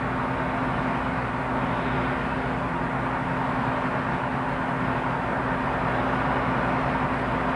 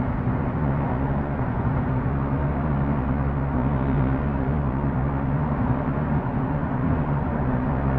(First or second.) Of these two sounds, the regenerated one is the second